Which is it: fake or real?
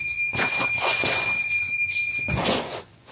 fake